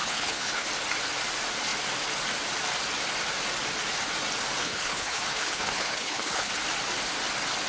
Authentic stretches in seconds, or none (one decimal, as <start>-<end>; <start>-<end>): 0.7-4.6; 6.5-7.7